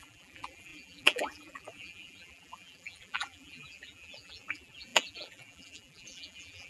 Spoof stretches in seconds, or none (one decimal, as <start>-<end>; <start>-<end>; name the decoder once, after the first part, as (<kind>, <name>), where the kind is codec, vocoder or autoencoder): 0.0-6.7 (vocoder, BigVGAN v2)